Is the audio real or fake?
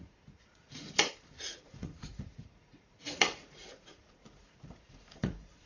fake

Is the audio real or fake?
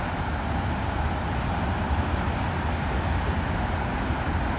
real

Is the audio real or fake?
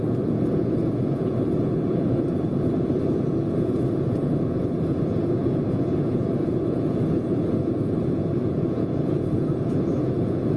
fake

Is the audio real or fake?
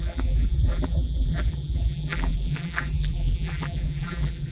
fake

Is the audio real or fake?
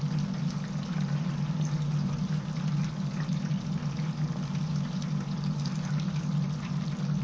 real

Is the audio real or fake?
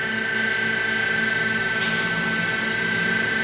real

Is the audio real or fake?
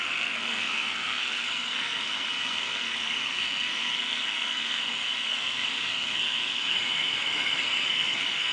fake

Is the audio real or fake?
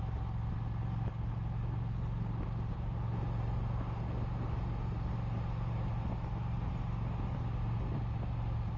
real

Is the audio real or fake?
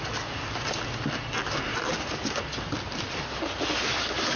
real